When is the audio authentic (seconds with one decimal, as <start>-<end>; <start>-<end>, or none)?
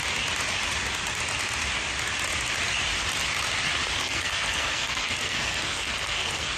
0.0-4.0